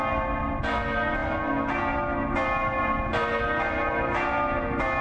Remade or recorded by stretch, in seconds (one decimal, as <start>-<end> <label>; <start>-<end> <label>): 0.0-5.0 recorded